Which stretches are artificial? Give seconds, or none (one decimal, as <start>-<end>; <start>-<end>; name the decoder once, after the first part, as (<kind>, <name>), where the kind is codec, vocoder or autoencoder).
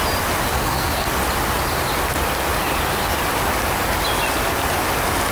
0.5-1.1 (codec, SNAC)